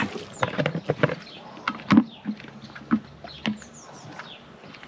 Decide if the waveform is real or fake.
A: real